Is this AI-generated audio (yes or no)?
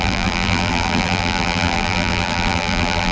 yes